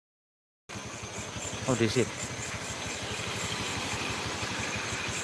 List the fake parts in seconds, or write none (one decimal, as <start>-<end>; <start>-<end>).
none